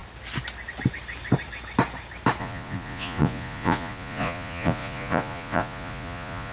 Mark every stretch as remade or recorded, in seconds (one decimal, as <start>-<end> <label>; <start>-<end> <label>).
0.0-2.4 recorded; 2.4-6.5 remade